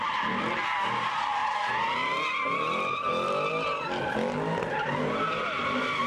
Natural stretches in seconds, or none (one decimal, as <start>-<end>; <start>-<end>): 0.0-6.1